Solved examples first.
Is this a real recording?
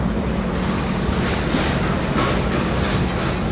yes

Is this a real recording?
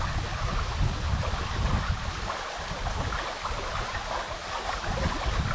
yes